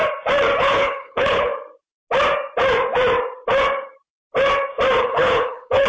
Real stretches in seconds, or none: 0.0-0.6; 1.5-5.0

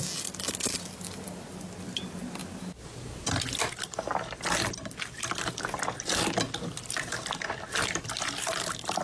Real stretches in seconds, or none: 0.0-9.0

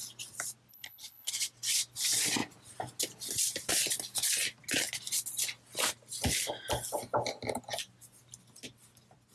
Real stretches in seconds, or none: 0.0-0.7; 1.3-9.3

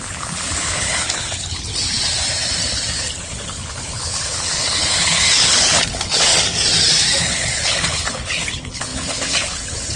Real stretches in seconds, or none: 1.7-3.2; 6.3-7.2

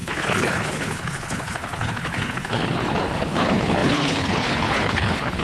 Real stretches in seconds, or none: none